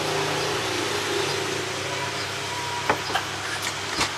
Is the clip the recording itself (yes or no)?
yes